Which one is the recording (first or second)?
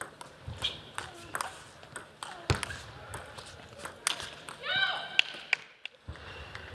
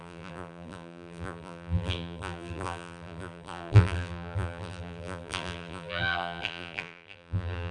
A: first